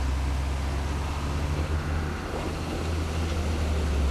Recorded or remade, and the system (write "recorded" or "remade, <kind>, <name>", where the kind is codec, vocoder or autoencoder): recorded